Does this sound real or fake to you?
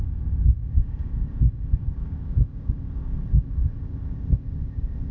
fake